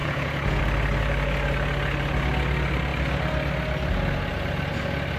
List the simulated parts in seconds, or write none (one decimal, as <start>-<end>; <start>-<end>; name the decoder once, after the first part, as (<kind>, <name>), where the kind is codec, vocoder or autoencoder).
0.0-0.6 (vocoder, Vocos)